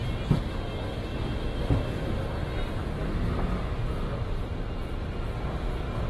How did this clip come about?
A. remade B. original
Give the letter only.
B